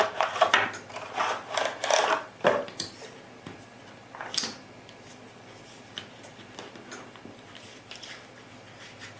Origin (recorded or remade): recorded